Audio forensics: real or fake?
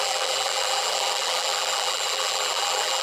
fake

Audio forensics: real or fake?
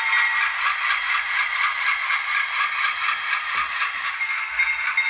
real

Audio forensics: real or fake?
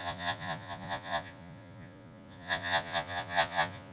fake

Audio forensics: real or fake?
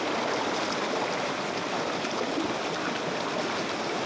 real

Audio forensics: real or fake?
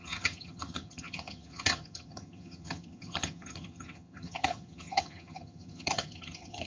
fake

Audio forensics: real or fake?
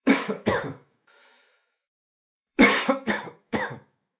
fake